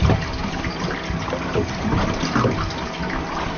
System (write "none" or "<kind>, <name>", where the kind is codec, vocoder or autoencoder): none